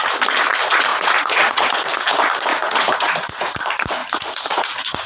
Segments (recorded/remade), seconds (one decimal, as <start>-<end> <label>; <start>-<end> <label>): 0.0-0.9 recorded; 0.9-1.6 remade; 1.6-2.5 recorded; 2.5-3.6 remade; 3.6-4.0 recorded; 4.0-5.1 remade